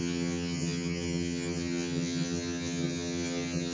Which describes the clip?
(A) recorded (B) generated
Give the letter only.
B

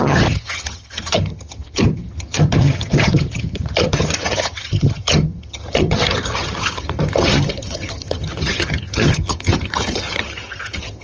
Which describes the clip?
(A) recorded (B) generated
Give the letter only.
B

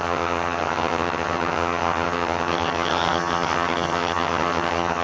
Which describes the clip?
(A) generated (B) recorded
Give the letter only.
A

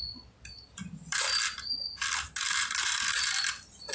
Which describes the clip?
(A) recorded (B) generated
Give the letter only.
A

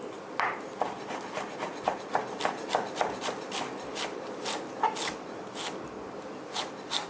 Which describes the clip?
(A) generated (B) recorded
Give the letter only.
B